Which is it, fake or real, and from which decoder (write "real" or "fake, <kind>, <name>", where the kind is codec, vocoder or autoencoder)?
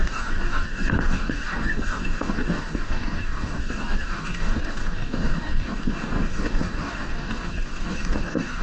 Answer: fake, codec, DAC